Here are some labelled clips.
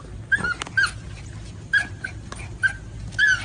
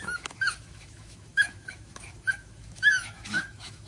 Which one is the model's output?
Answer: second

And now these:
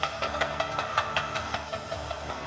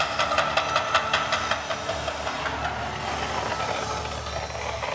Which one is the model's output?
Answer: first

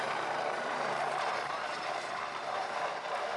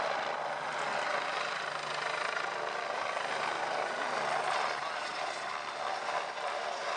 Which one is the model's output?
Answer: first